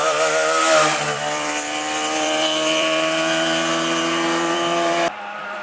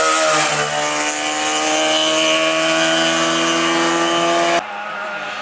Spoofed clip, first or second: first